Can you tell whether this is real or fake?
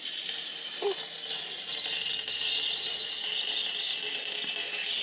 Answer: real